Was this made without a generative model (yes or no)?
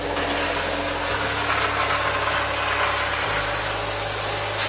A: yes